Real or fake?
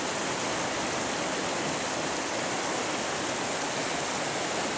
real